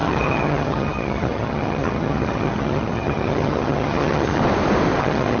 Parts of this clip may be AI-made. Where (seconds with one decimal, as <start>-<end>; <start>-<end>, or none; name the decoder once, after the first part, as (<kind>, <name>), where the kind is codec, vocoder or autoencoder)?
0.0-4.4 (vocoder, HiFi-GAN); 5.0-5.4